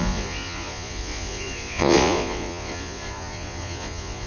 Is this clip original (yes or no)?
no